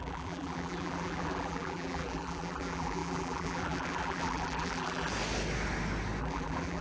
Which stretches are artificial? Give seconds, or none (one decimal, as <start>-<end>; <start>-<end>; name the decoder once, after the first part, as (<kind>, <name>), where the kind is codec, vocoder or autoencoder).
0.0-5.1 (vocoder, BigVGAN v2); 6.2-6.8